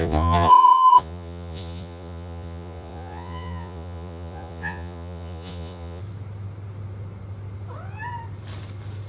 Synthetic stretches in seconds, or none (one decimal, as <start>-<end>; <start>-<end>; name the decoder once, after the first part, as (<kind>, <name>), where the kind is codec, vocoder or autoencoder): 0.0-6.0 (vocoder, Vocos)